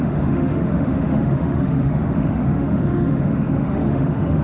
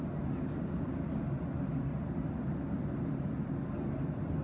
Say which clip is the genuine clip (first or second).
second